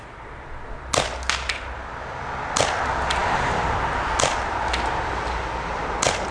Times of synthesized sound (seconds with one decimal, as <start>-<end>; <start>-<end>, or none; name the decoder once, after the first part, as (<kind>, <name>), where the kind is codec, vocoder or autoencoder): none